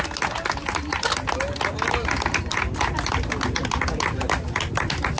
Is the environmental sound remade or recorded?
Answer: recorded